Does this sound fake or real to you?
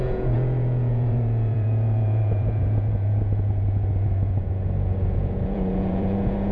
fake